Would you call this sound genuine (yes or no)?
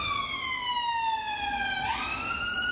yes